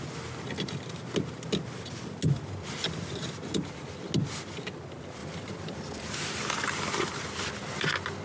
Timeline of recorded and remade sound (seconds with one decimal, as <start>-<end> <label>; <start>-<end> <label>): 0.0-5.2 recorded; 5.2-6.5 remade; 6.5-8.2 recorded